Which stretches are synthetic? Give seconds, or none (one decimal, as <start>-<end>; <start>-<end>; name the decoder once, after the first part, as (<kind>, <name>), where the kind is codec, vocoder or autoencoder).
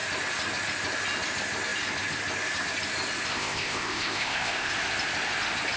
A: 3.3-4.7 (codec, ZipCodec)